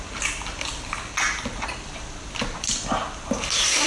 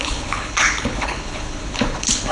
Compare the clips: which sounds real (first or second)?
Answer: first